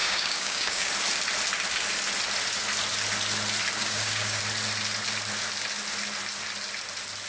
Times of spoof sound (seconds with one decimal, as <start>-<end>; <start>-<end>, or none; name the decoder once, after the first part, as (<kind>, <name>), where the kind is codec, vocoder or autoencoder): 0.0-0.9 (codec, DAC); 3.8-4.4

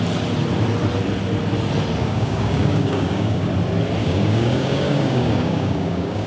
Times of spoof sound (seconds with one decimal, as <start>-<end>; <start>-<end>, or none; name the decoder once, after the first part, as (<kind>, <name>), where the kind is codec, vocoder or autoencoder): 2.0-3.5 (codec, DAC); 4.0-6.3

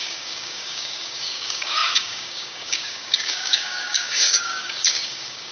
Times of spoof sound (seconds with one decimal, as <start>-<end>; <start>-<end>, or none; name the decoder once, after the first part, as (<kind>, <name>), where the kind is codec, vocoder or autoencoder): 0.0-5.5 (codec, DAC)

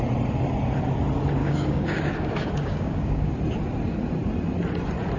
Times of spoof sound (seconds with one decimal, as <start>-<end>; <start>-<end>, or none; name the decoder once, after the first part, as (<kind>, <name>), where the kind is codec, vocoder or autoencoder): 1.4-3.3 (codec, DAC)

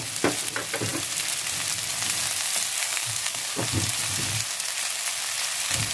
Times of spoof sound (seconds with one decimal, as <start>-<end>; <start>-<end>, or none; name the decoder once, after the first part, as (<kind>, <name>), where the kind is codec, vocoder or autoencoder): 2.8-3.5 (codec, DAC)

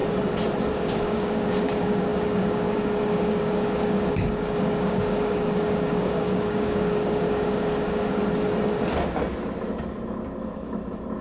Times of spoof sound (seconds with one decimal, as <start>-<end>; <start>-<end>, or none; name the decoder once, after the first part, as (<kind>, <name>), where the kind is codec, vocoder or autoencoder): 0.7-8.2 (codec, DAC)

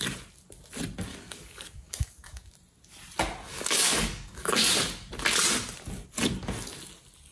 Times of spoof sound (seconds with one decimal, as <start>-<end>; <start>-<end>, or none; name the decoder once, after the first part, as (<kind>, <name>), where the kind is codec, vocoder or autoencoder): 1.1-2.5 (codec, DAC); 3.5-4.7

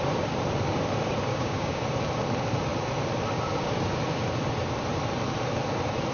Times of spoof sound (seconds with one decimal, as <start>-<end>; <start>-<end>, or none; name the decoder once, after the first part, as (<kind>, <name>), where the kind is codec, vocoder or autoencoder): 1.3-1.8 (codec, DAC)